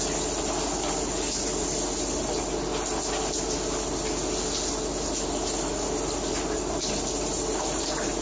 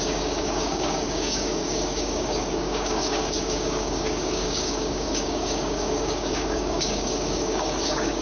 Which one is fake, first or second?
second